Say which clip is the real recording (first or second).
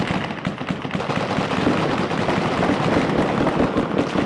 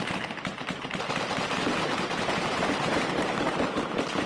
first